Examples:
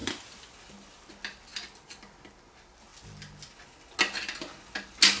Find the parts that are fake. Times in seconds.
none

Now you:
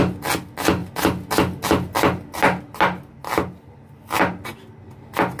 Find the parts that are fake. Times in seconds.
none

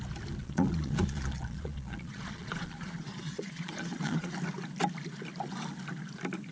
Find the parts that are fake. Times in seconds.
0.4-4.3 (vocoder, Vocos)

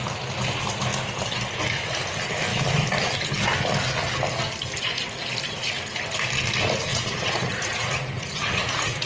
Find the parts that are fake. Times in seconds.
6.9-9.1 (vocoder, Vocos)

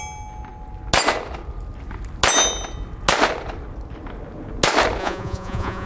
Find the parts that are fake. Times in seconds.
5.0-5.9 (vocoder, Vocos)

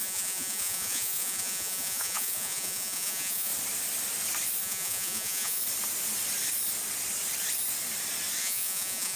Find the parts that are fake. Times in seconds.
0.0-3.5 (vocoder, Vocos); 4.6-5.6; 8.4-9.2

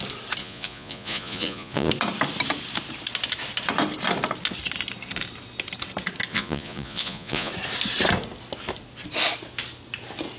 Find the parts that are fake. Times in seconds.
0.4-1.9 (vocoder, Vocos); 6.3-7.5

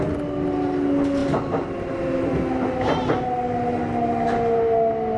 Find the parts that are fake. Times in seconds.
none